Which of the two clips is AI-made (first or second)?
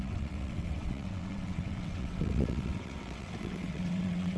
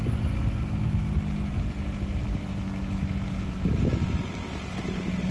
first